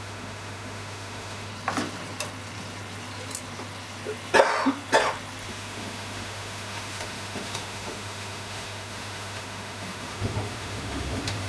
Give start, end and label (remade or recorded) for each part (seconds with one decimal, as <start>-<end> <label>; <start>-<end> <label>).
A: 0.0-1.5 remade; 1.5-5.5 recorded; 5.5-11.5 remade